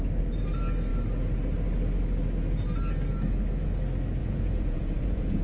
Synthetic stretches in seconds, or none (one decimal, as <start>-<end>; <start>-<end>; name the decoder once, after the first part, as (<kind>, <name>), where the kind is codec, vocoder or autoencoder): 4.2-5.4 (vocoder, Vocos)